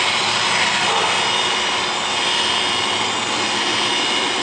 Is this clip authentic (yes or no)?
yes